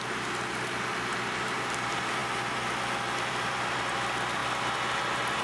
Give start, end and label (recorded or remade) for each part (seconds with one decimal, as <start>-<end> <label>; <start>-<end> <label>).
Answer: 0.0-5.4 recorded